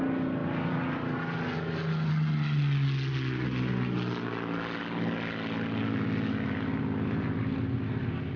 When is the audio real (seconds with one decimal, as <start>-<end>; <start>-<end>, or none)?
0.0-8.4

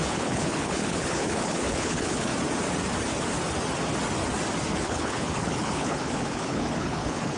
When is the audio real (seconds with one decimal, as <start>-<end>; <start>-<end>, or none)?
2.3-4.7

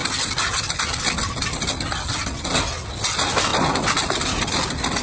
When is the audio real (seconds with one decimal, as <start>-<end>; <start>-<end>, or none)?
0.0-5.0

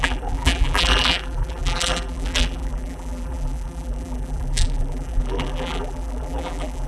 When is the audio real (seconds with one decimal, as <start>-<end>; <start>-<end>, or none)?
none

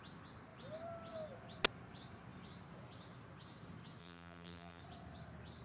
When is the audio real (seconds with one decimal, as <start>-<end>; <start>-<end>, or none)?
0.0-4.0; 4.8-5.6